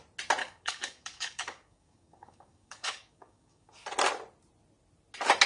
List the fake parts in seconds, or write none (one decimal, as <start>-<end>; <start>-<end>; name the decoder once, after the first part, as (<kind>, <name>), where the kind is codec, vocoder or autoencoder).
0.4-3.7 (codec, DAC)